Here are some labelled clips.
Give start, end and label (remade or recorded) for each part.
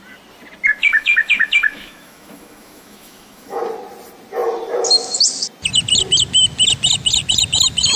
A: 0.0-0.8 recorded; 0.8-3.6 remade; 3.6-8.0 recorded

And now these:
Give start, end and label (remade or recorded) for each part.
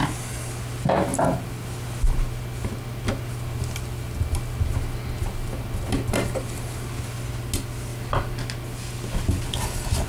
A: 0.0-10.1 recorded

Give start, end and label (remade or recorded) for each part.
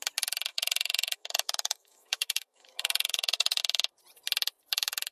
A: 0.0-0.5 recorded; 0.5-3.6 remade; 3.6-5.1 recorded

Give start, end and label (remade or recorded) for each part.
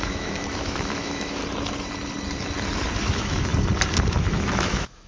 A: 0.0-1.4 remade; 1.4-3.0 recorded; 3.0-3.5 remade; 3.5-4.1 recorded; 4.1-5.1 remade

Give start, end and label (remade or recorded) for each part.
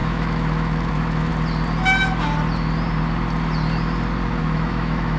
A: 0.0-1.3 remade; 1.3-4.4 recorded; 4.4-5.2 remade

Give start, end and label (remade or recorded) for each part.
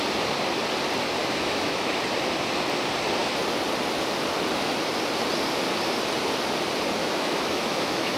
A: 0.0-1.2 recorded; 1.2-1.9 remade; 1.9-7.0 recorded; 7.0-8.2 remade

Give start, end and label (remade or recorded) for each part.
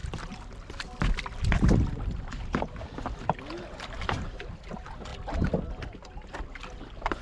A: 0.0-7.2 recorded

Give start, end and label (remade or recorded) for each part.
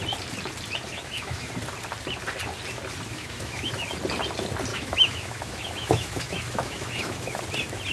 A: 0.0-0.9 recorded; 0.9-1.5 remade; 1.5-3.1 recorded; 3.1-3.7 remade; 3.7-4.7 recorded; 4.7-7.4 remade; 7.4-7.9 recorded